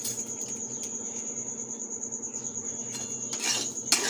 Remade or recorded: recorded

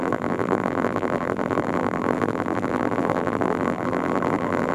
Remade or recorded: remade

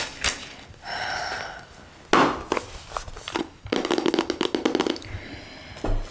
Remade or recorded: recorded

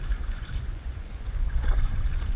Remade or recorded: remade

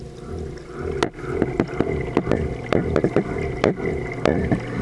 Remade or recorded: recorded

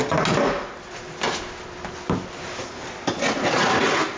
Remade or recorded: recorded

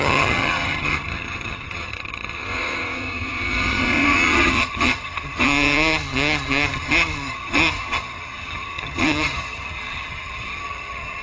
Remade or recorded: remade